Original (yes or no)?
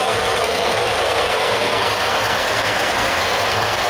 no